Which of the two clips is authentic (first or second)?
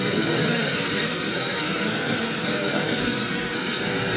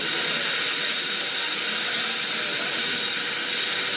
second